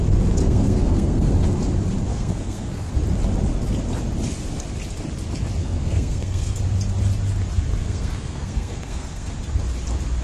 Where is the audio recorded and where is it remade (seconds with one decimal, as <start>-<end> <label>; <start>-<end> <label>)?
0.0-0.4 recorded; 0.4-1.3 remade; 1.3-2.1 recorded; 2.1-2.9 remade; 2.9-5.6 recorded; 5.6-6.6 remade; 6.6-7.8 recorded; 7.8-9.3 remade; 9.3-10.2 recorded